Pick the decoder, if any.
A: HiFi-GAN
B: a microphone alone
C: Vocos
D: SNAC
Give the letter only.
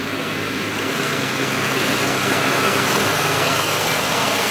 D